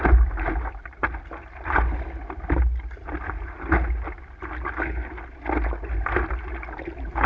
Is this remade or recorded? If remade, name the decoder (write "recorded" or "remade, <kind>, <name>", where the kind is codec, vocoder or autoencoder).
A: recorded